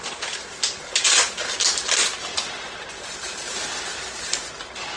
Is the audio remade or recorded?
recorded